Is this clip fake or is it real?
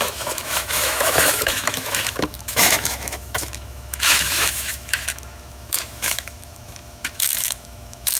fake